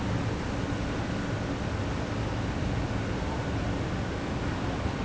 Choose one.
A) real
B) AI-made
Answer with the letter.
A